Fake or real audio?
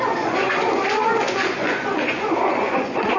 fake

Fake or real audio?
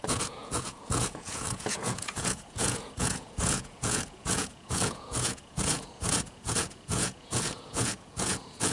fake